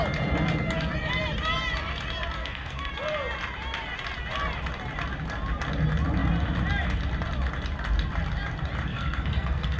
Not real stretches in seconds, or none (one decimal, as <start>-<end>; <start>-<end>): 2.4-2.9; 8.9-9.8